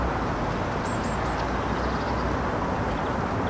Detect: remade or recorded recorded